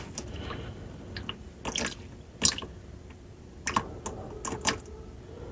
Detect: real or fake real